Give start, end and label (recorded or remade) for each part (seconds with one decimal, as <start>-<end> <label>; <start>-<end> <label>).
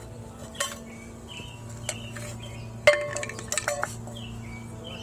0.0-5.0 recorded